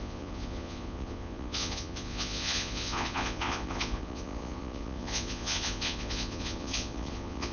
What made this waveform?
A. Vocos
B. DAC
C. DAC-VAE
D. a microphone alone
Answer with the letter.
A